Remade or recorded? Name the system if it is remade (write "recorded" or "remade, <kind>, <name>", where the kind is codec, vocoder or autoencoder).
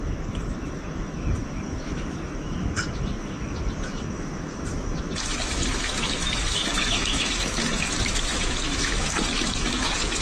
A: remade, autoencoder, DAC-VAE